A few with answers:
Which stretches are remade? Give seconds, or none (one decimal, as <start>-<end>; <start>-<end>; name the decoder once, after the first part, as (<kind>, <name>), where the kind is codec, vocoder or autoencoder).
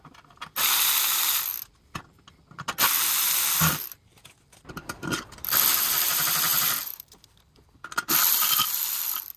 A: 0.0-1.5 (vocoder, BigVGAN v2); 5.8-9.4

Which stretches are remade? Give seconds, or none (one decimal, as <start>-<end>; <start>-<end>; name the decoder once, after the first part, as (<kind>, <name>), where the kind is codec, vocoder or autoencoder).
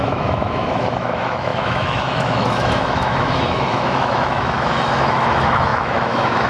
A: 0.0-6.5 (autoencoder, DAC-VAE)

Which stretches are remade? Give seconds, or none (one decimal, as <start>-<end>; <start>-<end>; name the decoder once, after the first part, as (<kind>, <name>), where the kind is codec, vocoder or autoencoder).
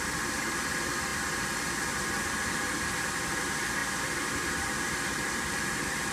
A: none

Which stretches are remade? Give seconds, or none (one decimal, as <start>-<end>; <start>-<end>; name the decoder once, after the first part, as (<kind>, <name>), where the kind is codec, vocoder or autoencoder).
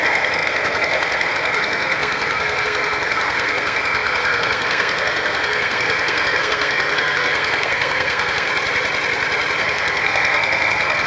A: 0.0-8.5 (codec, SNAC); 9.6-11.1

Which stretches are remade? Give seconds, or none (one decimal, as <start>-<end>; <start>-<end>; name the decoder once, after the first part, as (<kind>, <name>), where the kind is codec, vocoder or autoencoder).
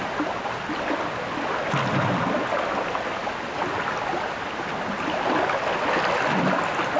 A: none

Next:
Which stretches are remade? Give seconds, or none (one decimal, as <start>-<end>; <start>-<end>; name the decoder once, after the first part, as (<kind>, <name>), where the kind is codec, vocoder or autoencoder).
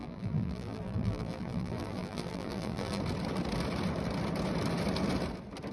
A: 0.0-3.0 (vocoder, BigVGAN v2)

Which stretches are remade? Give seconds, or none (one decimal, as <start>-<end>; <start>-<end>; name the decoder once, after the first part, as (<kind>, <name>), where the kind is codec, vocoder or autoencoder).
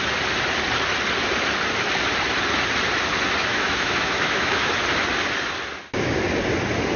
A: 3.5-4.7 (autoencoder, DAC-VAE)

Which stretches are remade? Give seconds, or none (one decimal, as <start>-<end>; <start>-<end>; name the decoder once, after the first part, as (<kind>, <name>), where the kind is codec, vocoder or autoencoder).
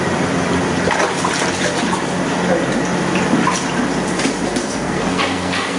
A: 4.6-5.8 (codec, SNAC)